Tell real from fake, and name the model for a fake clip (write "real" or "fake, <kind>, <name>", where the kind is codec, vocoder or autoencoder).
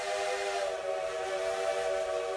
real